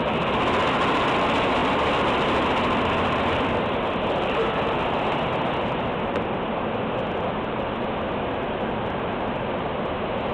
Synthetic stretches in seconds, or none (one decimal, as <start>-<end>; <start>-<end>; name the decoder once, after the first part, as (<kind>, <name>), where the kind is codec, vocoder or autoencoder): none